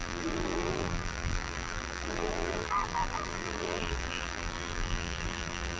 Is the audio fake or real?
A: fake